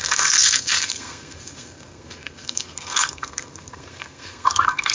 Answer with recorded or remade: remade